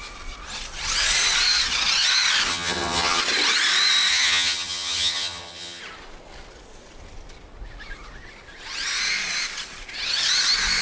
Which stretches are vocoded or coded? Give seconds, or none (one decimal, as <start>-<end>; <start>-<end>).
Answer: 2.5-3.2; 4.1-5.8